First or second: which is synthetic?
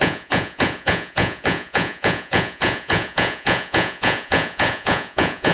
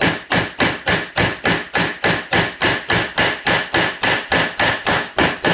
first